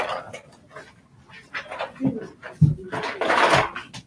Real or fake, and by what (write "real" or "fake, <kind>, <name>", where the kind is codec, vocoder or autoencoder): real